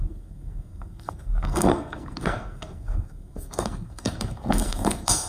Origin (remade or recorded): remade